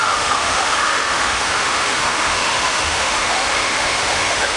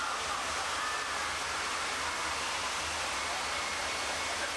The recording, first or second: second